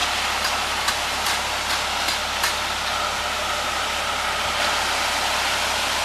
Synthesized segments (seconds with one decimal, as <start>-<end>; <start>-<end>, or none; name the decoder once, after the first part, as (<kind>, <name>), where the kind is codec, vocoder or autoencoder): none

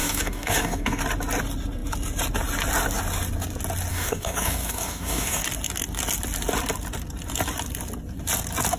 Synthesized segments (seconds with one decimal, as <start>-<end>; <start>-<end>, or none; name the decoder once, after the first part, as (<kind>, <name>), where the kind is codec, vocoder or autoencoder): 0.0-1.0 (codec, DAC); 3.9-5.4

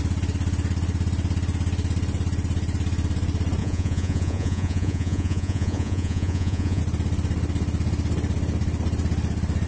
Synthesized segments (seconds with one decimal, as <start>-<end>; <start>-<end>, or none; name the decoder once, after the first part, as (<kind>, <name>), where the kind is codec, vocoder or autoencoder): 3.6-6.8 (vocoder, Vocos)

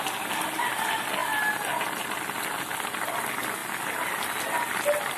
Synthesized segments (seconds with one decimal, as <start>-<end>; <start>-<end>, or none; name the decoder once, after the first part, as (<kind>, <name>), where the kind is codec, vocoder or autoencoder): none

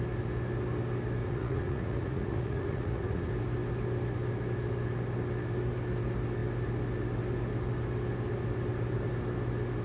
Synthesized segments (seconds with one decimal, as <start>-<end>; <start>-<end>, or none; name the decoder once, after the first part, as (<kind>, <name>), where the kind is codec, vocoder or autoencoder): 1.2-3.3 (vocoder, Vocos)

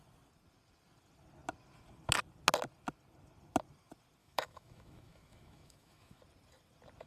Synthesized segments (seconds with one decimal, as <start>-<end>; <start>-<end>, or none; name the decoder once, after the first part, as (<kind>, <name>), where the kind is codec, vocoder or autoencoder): 4.2-6.2 (autoencoder, DAC-VAE)

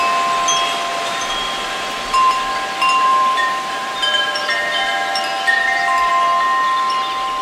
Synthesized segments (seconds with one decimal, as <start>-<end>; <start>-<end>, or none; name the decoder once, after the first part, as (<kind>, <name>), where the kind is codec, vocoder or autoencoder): 0.9-2.4 (vocoder, BigVGAN v2); 3.1-6.1